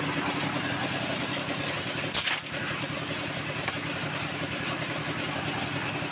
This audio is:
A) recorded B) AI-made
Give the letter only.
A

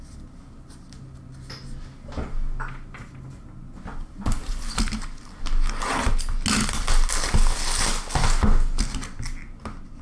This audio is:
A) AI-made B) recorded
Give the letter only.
B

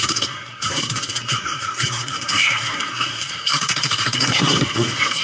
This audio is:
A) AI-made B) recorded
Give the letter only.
A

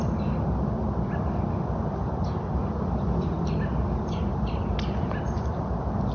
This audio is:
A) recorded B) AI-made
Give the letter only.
A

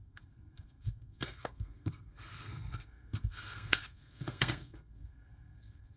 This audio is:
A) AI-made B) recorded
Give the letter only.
A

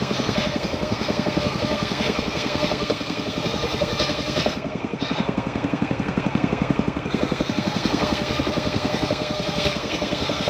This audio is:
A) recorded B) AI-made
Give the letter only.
B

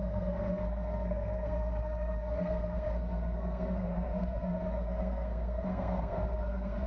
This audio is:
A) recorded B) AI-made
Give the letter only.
B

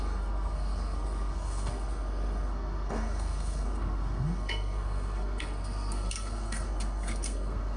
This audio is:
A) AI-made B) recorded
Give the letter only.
A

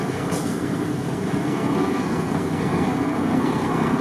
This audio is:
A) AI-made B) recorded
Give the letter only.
A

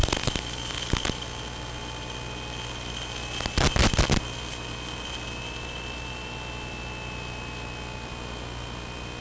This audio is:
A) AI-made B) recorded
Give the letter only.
B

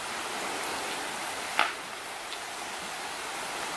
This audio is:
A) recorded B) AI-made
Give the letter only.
A